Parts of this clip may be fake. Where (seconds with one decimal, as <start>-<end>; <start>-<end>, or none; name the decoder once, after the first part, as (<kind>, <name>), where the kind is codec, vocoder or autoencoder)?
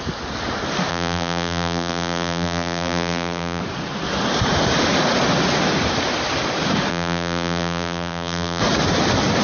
0.9-3.6 (vocoder, BigVGAN v2); 6.9-8.6